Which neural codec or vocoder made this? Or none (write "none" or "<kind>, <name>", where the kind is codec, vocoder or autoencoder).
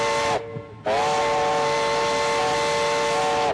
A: none